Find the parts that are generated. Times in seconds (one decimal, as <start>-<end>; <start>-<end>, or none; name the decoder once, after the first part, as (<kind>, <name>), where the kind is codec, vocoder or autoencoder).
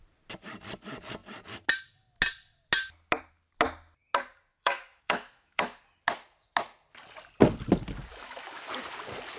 4.5-5.8 (autoencoder, DAC-VAE); 8.1-8.7